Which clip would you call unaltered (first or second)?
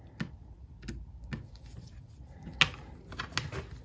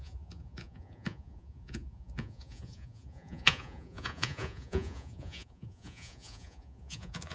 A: first